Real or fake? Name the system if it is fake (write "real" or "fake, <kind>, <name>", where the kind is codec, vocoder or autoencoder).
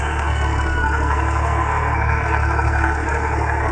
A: fake, codec, SNAC